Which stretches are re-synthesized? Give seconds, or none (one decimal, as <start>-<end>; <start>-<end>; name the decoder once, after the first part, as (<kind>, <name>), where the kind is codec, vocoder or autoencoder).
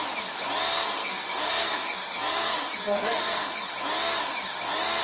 0.7-3.7 (codec, SNAC)